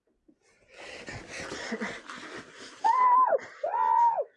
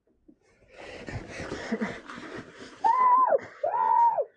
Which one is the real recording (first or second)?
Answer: first